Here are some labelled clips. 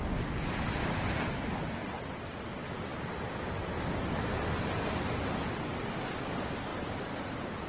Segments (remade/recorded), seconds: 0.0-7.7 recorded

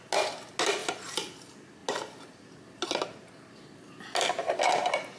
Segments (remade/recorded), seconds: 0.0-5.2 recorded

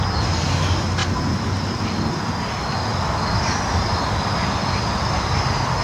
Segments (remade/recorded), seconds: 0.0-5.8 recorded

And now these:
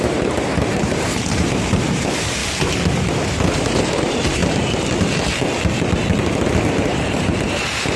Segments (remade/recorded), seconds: 0.0-2.4 remade; 2.4-3.1 recorded; 3.1-4.4 remade; 4.4-6.7 recorded; 6.7-8.0 remade

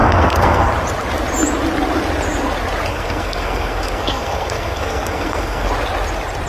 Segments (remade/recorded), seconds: 0.0-0.7 remade; 0.7-2.9 recorded; 2.9-5.7 remade; 5.7-6.5 recorded

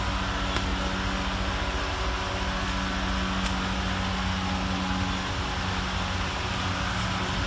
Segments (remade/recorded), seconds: 0.0-7.5 recorded